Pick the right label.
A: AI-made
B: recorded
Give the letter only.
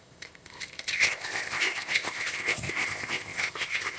A